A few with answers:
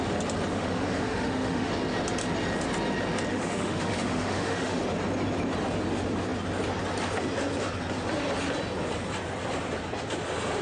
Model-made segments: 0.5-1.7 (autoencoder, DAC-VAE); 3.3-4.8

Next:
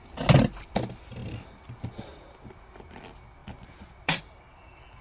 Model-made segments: 3.4-4.2 (vocoder, BigVGAN v2)

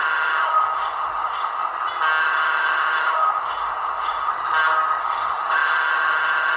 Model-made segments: 0.0-1.7 (autoencoder, DAC-VAE); 2.2-4.3; 5.0-6.6